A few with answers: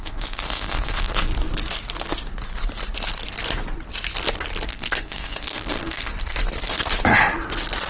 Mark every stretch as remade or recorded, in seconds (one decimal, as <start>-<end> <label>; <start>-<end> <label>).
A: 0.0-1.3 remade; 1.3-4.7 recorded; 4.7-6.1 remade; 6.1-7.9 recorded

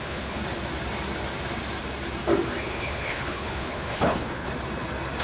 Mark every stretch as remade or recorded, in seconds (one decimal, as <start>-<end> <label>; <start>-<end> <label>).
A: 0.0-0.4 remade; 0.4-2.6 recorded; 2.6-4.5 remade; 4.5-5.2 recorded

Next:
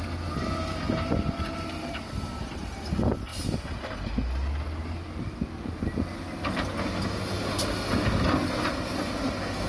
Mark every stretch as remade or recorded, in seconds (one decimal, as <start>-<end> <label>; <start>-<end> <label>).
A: 0.0-9.7 recorded

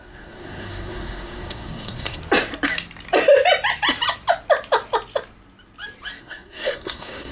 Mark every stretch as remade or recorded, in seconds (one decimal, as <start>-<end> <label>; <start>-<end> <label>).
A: 0.0-2.2 remade; 2.2-6.2 recorded; 6.2-7.3 remade